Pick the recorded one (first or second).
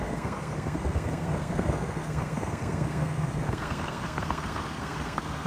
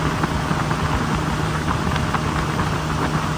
second